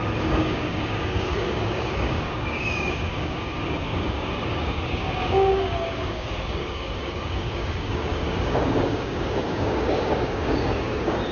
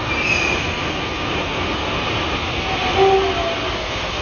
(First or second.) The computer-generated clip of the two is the first